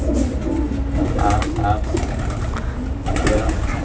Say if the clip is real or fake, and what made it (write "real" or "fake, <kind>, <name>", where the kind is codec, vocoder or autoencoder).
real